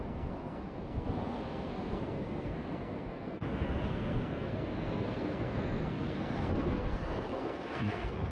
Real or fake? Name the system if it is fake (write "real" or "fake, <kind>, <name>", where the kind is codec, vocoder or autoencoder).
fake, codec, SNAC